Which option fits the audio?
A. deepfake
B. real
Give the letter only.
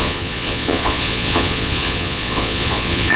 A